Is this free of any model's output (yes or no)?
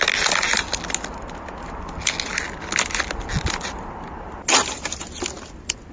yes